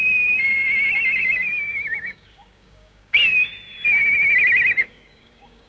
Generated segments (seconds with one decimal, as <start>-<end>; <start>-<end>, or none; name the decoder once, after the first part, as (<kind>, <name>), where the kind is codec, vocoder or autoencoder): 1.2-3.5 (codec, DAC); 4.8-5.7